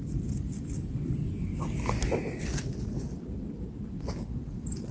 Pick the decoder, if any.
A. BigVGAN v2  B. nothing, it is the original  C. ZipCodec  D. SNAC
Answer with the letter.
B